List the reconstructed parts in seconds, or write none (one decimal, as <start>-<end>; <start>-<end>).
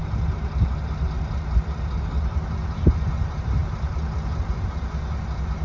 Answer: none